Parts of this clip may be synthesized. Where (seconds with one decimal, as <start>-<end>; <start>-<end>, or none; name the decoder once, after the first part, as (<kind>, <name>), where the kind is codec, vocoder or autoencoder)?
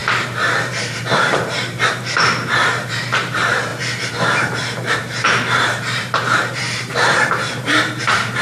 0.0-8.4 (vocoder, BigVGAN v2)